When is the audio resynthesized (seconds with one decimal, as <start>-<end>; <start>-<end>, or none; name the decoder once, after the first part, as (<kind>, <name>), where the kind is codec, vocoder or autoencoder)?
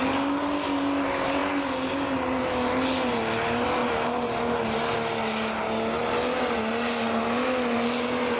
none